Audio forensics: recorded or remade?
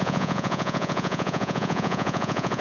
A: remade